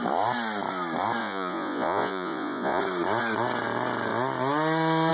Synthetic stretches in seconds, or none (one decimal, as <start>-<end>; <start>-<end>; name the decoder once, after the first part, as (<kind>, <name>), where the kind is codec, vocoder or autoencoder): 1.2-2.8 (vocoder, Vocos)